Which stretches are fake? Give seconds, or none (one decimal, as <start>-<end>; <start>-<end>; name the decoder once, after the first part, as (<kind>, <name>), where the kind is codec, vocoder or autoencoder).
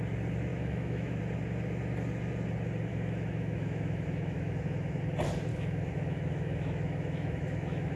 0.5-1.2 (autoencoder, DAC-VAE); 2.9-5.0; 5.5-8.0